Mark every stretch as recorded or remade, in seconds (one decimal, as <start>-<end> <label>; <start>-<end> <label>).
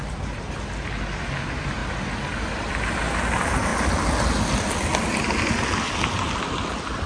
0.0-0.6 remade; 0.6-1.8 recorded; 1.8-3.0 remade; 3.0-7.1 recorded